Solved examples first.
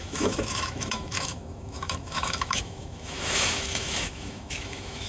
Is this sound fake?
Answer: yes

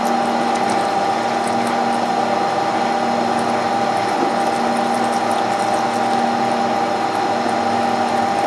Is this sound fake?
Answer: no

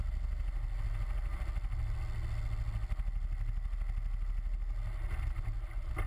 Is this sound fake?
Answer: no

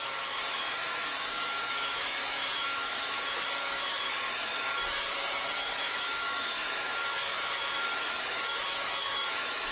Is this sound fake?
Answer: yes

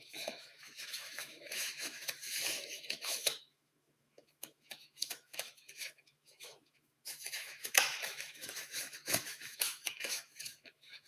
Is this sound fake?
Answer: yes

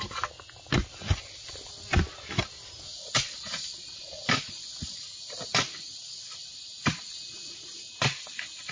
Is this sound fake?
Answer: no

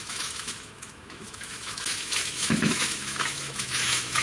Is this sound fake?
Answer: yes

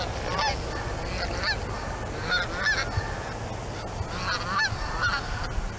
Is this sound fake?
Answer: no